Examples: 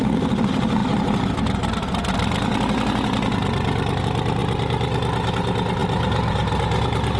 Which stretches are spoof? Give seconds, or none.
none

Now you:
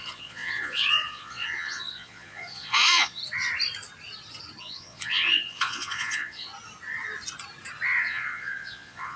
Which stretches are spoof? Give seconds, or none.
0.0-3.2 (vocoder, Vocos); 4.6-6.5; 8.0-9.2

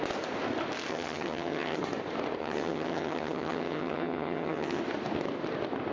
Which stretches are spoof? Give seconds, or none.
0.9-1.8 (vocoder, HiFi-GAN); 2.4-4.8

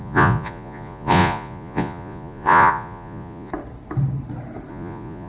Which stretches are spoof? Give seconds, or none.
0.0-3.5 (vocoder, Vocos); 4.7-5.3